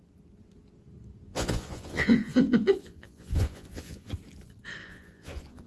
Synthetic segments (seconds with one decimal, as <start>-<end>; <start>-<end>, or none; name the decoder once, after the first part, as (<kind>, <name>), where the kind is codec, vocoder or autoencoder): 1.3-4.1 (vocoder, Vocos); 4.8-5.7